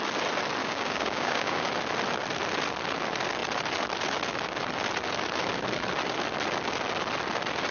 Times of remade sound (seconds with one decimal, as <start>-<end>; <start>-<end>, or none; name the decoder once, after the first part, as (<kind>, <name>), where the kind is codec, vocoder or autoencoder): 0.6-1.7 (codec, DAC)